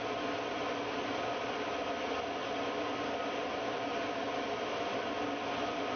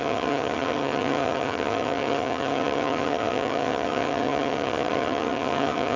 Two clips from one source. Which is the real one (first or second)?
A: first